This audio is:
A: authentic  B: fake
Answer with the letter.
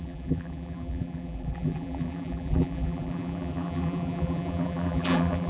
B